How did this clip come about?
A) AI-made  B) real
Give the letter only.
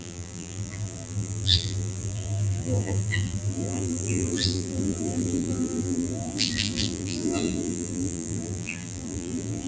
A